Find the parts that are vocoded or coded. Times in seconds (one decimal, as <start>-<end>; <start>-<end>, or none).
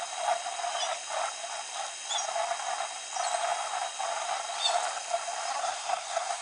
5.5-6.4